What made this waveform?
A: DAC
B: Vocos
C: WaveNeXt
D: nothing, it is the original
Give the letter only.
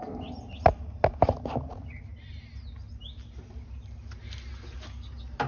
D